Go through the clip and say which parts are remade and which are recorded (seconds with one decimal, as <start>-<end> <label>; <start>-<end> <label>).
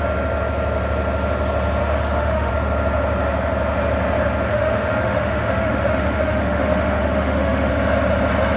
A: 0.0-1.8 recorded; 1.8-2.5 remade; 2.5-4.5 recorded; 4.5-7.7 remade; 7.7-8.6 recorded